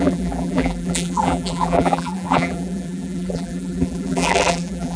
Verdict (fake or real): fake